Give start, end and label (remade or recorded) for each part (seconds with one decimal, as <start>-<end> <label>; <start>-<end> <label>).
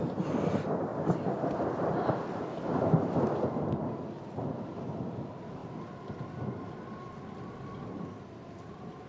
0.0-9.1 recorded